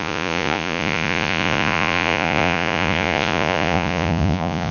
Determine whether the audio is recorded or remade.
remade